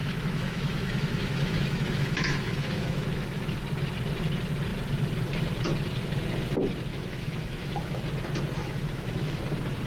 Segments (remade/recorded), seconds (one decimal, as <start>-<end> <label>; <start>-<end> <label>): 0.0-3.6 remade; 3.6-6.9 recorded; 6.9-8.0 remade; 8.0-8.6 recorded; 8.6-9.4 remade; 9.4-9.9 recorded